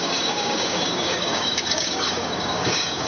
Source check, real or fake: fake